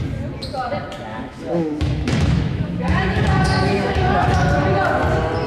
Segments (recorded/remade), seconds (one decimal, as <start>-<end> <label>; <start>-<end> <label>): 0.0-1.1 recorded; 1.1-4.4 remade; 4.4-5.5 recorded